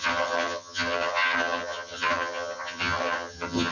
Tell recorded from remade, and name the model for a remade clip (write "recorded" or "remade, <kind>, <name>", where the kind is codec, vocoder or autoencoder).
remade, vocoder, HiFi-GAN